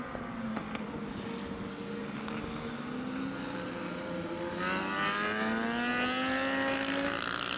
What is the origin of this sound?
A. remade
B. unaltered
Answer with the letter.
B